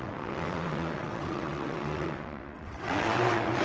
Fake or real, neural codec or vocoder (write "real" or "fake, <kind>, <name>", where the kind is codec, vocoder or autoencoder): fake, vocoder, WaveNeXt